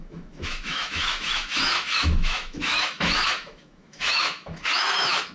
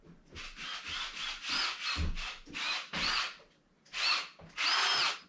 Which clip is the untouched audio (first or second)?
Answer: second